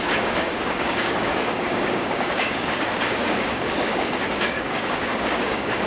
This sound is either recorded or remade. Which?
remade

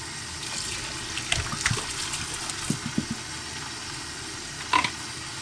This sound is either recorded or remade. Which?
recorded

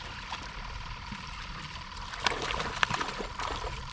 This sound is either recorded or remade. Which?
recorded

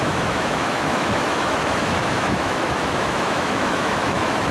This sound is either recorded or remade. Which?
remade